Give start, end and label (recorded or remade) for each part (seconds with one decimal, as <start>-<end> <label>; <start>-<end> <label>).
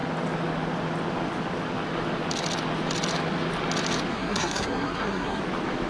0.0-4.1 recorded; 4.1-5.4 remade; 5.4-5.9 recorded